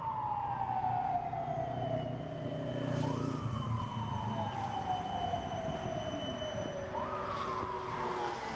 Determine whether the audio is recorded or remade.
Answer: recorded